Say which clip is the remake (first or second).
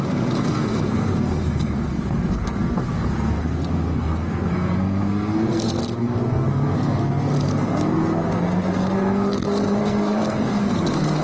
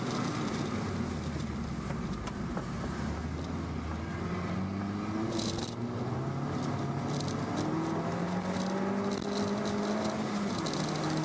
first